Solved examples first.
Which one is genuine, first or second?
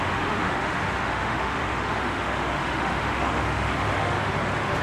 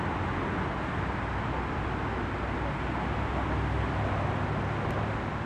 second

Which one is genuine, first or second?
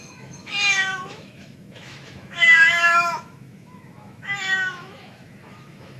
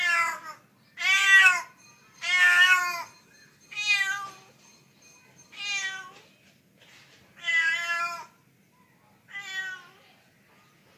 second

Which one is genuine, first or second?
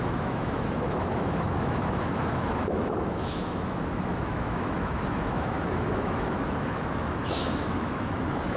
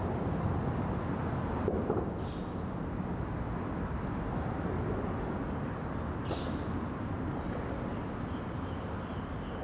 second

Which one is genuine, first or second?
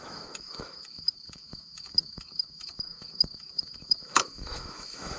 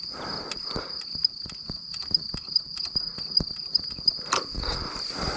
second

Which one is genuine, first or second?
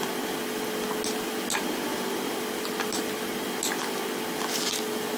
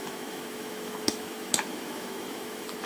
first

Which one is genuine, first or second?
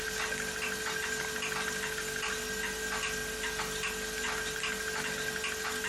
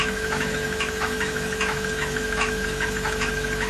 first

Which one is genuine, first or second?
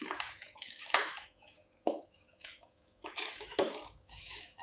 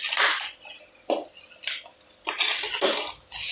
second